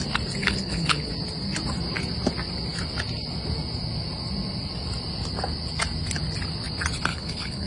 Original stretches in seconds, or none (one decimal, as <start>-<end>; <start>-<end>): 0.0-0.4; 1.1-7.1